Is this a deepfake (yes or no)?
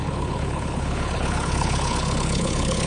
yes